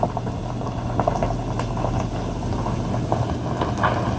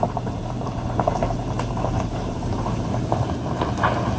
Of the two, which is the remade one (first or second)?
second